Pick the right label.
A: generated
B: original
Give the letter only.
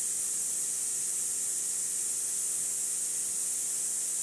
B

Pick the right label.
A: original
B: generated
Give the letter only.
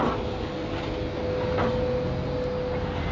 A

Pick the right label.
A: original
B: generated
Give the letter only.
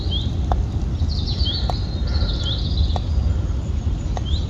A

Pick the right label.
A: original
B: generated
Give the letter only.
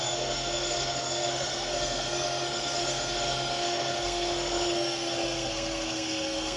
B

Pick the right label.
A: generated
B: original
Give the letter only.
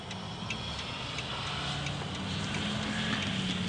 B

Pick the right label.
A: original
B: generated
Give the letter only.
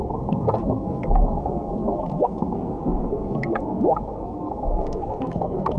B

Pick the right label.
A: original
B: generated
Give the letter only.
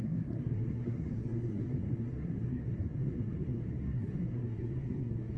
B